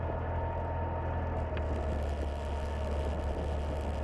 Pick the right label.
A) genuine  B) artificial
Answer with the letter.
A